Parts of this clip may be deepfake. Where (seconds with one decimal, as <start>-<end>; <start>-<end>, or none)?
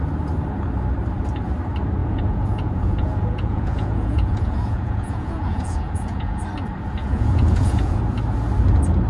2.0-6.4; 7.0-8.0